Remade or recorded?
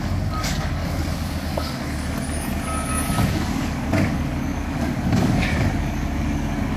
remade